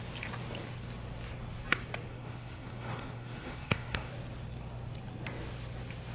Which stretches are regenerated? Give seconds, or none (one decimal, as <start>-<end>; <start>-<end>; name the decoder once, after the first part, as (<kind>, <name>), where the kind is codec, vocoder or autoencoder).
2.1-4.1 (codec, SNAC)